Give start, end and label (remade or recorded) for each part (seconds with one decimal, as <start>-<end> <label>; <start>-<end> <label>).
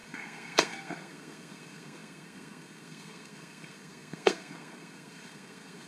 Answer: 0.0-5.9 remade